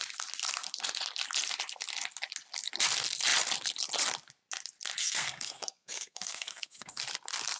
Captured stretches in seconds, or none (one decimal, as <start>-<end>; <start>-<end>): 0.0-5.0; 7.0-7.6